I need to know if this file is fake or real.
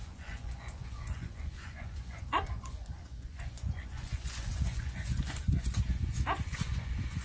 fake